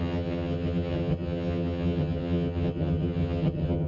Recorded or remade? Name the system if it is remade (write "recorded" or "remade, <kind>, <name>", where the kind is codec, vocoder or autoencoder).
remade, vocoder, HiFi-GAN